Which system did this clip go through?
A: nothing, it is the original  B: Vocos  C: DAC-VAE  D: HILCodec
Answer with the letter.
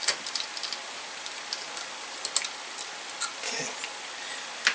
A